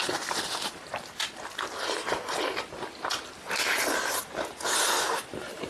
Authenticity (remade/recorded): recorded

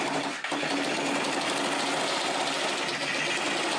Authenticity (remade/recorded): recorded